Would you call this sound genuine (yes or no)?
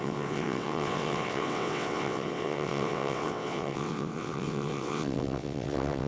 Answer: no